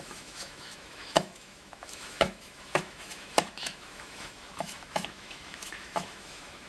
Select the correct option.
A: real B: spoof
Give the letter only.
B